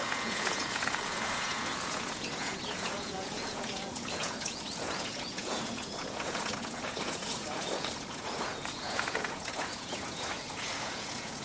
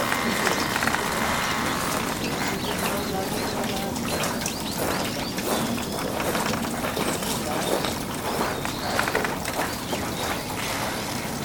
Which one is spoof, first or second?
first